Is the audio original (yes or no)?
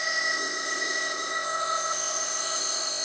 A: no